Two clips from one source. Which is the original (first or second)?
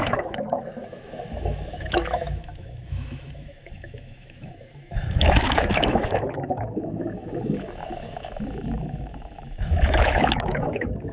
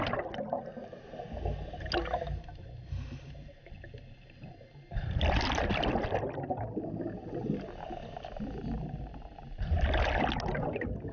second